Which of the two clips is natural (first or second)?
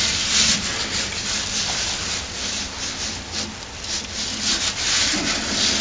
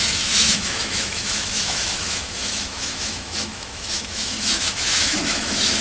first